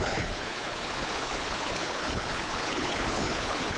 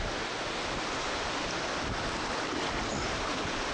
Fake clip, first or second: first